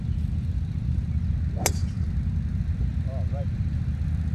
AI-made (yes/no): no